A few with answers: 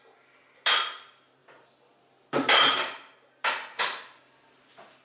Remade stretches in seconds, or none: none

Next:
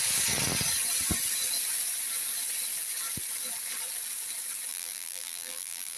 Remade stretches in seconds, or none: 4.7-6.0

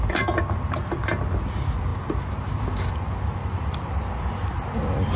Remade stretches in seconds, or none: 3.4-3.9